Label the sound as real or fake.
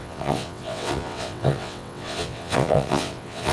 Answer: fake